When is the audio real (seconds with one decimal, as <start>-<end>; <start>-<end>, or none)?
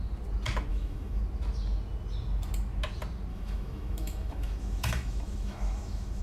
0.0-0.7; 1.2-3.3